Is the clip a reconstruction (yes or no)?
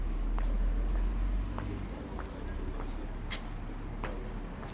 no